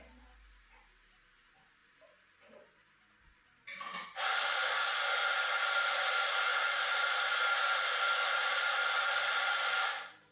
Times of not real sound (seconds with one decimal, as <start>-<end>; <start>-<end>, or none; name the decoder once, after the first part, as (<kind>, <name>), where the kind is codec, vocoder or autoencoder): none